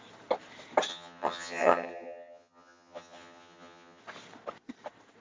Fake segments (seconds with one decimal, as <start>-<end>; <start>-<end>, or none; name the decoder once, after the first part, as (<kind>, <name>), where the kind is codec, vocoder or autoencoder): 0.9-4.0 (vocoder, HiFi-GAN)